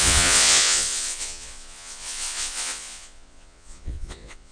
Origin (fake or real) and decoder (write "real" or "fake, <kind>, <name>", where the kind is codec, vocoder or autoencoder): fake, vocoder, Vocos